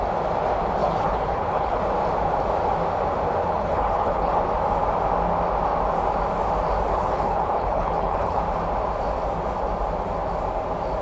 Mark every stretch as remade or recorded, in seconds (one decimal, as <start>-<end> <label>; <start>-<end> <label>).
0.0-0.8 recorded; 0.8-1.8 remade; 1.8-3.4 recorded; 3.4-4.4 remade; 4.4-6.9 recorded; 6.9-8.4 remade; 8.4-11.0 recorded